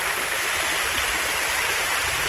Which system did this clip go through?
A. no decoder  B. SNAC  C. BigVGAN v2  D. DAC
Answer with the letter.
A